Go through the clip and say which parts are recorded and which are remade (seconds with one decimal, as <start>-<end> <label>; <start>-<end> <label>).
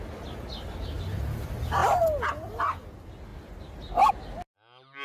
0.0-5.0 recorded